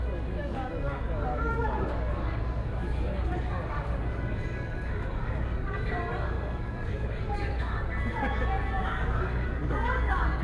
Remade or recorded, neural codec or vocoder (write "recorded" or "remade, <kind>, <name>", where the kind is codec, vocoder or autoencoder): remade, codec, DAC